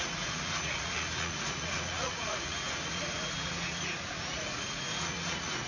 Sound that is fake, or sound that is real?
fake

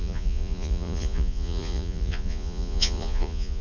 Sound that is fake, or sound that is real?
fake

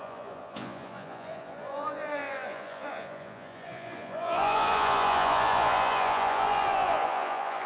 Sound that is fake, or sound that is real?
fake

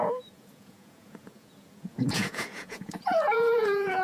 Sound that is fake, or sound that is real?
fake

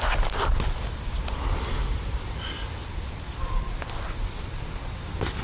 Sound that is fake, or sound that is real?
real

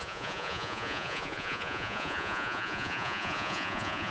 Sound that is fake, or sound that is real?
fake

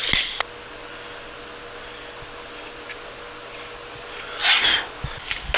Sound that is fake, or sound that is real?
real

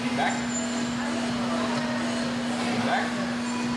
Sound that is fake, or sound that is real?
real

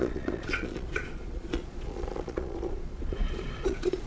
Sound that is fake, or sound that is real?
fake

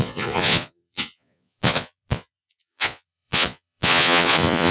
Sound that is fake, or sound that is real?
fake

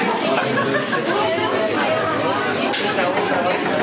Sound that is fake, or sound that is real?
real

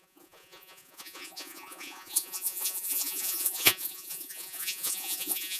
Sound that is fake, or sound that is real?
fake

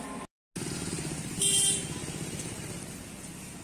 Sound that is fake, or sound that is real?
real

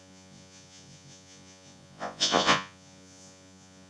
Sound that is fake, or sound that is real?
fake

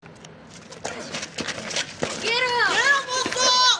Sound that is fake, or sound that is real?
real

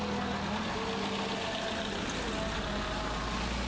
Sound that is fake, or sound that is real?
real